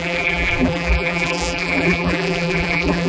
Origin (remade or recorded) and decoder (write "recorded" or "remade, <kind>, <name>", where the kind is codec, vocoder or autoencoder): remade, vocoder, BigVGAN v2